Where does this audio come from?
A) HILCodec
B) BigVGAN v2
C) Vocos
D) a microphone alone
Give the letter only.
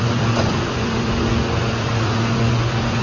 C